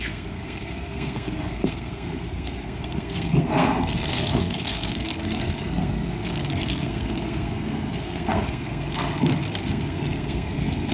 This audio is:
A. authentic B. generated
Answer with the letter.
B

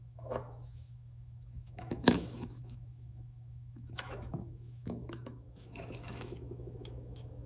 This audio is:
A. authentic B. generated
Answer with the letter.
B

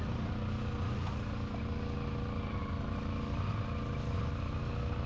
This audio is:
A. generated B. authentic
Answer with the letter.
B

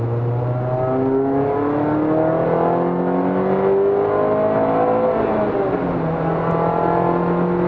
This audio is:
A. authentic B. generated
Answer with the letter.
A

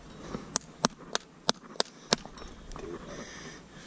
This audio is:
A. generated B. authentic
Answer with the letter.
B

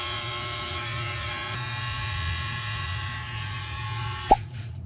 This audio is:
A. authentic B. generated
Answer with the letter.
B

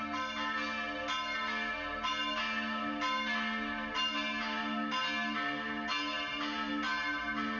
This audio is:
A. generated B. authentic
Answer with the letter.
B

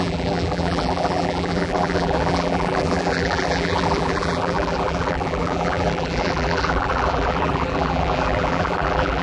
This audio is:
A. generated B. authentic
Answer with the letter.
A